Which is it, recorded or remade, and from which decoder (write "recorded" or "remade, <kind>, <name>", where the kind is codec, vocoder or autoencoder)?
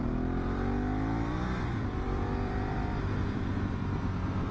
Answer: remade, vocoder, BigVGAN v2